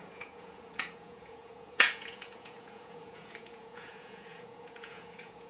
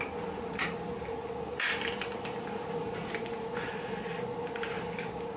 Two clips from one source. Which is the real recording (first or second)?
second